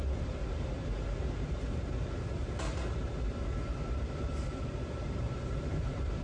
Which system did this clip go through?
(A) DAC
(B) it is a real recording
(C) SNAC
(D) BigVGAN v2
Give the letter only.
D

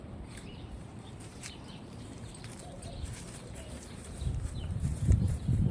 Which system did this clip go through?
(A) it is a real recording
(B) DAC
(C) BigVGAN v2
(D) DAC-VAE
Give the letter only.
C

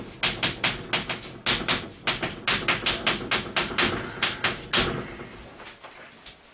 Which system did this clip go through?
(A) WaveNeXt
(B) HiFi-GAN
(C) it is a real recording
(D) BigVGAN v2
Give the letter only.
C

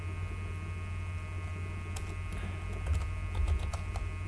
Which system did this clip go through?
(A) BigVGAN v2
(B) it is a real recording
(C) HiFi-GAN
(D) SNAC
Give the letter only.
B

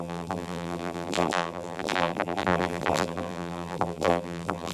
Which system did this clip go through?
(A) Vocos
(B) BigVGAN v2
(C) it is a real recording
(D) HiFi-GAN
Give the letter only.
B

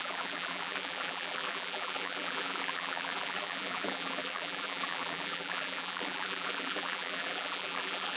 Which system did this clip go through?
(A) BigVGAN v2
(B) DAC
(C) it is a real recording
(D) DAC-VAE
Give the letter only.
A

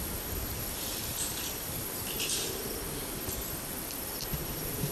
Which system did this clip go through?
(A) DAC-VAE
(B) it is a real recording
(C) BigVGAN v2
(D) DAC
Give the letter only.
C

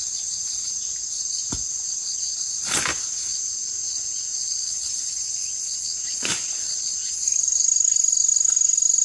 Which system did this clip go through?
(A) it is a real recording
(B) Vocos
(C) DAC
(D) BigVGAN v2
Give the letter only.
A